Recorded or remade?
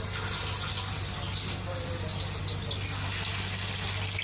recorded